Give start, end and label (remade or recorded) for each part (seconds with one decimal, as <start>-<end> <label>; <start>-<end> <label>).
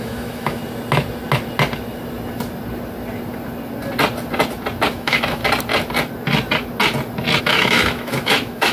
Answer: 0.0-0.6 remade; 0.6-4.9 recorded; 4.9-5.4 remade; 5.4-7.4 recorded; 7.4-8.7 remade